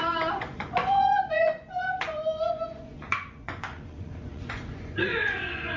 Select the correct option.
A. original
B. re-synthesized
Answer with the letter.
B